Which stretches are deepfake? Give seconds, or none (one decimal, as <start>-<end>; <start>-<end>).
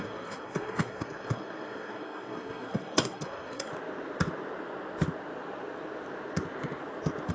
0.0-3.7